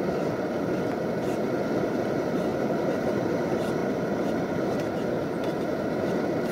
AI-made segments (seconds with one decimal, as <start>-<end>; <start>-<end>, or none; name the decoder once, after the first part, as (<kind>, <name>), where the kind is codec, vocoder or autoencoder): 2.5-3.4 (vocoder, BigVGAN v2); 5.2-5.7